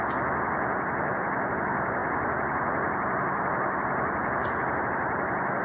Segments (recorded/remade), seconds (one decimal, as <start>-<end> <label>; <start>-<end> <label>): 0.0-1.5 recorded; 1.5-5.6 remade